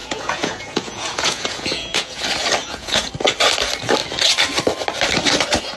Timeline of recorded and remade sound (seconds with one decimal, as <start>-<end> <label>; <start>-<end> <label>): 0.0-2.2 remade; 2.2-2.6 recorded; 2.6-3.1 remade; 3.1-5.8 recorded

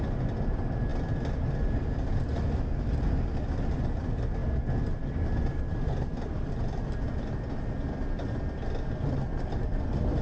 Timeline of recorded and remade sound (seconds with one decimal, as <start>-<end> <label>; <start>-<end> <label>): 0.0-10.2 recorded

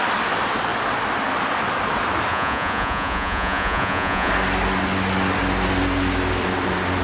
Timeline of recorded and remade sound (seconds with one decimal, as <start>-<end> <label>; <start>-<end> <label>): 0.0-2.3 recorded; 2.3-4.3 remade; 4.3-7.0 recorded

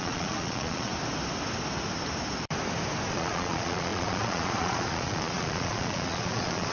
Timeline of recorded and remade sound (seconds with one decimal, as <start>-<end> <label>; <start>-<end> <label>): 0.0-0.9 remade; 0.9-3.1 recorded; 3.1-6.7 remade